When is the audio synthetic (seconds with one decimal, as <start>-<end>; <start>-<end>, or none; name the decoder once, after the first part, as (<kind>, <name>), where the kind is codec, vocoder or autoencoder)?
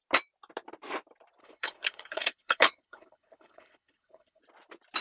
1.4-4.4 (codec, HILCodec)